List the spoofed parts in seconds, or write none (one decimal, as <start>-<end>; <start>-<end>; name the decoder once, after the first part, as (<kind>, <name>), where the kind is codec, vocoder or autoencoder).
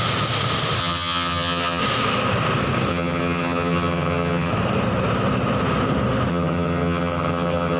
0.8-1.8 (vocoder, HiFi-GAN); 2.9-4.5; 6.3-7.8